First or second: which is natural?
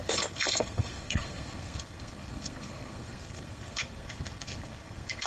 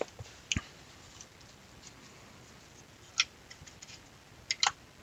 second